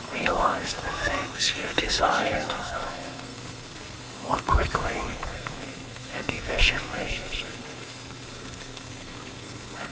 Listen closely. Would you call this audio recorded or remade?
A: remade